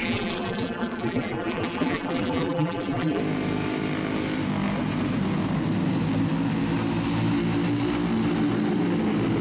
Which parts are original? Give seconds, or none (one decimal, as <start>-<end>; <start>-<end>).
3.2-9.4